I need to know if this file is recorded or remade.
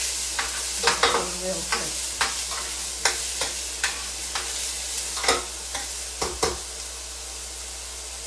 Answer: recorded